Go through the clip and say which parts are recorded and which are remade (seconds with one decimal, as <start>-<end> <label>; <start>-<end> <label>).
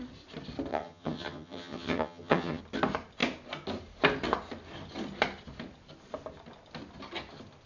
0.0-0.7 recorded; 0.7-2.6 remade; 2.6-7.7 recorded